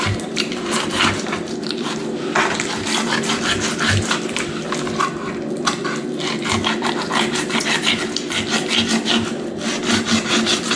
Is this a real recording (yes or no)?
yes